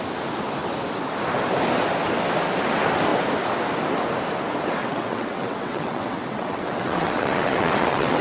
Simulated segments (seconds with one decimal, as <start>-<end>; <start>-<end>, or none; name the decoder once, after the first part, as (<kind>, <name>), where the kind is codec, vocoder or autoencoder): 4.8-8.2 (vocoder, WaveNeXt)